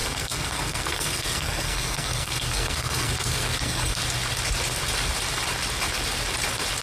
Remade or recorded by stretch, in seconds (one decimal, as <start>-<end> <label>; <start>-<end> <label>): 0.0-4.0 remade; 4.0-6.8 recorded